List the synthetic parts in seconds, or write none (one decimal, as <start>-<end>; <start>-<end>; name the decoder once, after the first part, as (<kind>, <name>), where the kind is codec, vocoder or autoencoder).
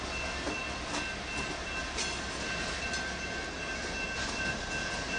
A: none